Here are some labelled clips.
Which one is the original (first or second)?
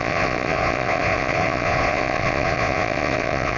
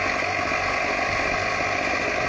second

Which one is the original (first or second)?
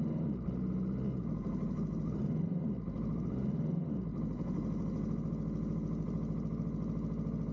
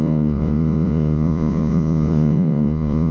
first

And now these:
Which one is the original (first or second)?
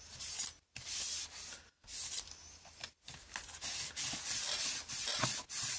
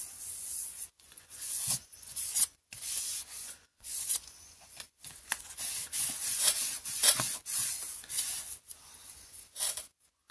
first